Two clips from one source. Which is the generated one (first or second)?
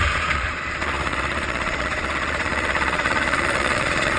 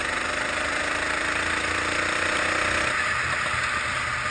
first